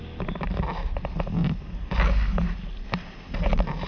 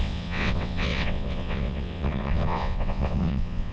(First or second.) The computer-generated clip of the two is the second